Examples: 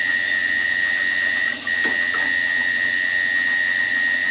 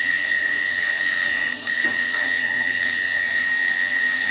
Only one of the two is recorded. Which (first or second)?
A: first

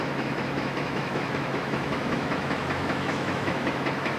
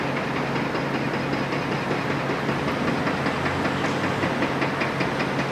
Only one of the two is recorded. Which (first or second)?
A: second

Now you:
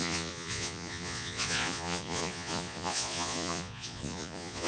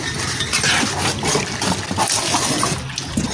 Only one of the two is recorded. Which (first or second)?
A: second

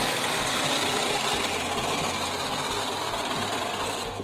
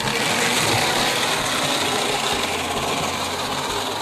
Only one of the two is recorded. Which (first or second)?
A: second